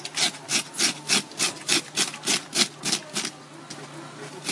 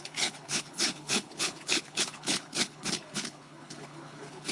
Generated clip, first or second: second